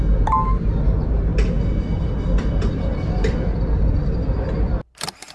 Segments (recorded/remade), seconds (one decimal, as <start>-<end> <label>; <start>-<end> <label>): 0.0-5.3 recorded

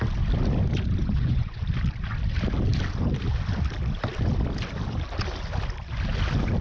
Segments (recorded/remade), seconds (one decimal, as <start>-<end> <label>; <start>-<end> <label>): 0.0-1.0 recorded; 1.0-1.6 remade; 1.6-6.6 recorded

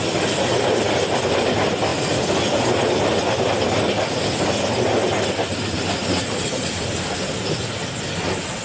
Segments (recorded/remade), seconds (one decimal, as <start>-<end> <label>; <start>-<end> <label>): 0.0-8.6 recorded

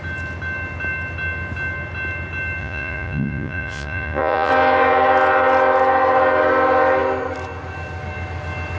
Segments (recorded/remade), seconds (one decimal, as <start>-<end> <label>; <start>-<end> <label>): 0.0-2.6 recorded; 2.6-4.5 remade; 4.5-8.8 recorded